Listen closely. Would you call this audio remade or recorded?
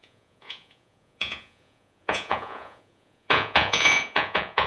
remade